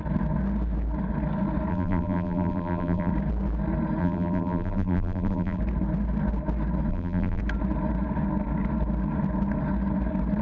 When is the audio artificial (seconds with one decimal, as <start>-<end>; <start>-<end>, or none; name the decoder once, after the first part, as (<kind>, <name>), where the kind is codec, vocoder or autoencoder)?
1.7-3.1 (vocoder, BigVGAN v2); 4.0-5.6; 6.9-7.4

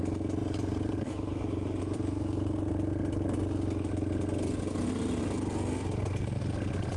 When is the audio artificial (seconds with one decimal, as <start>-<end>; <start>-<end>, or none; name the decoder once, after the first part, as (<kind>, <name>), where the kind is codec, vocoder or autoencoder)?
0.4-2.7 (vocoder, BigVGAN v2)